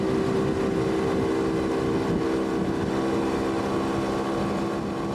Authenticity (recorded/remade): recorded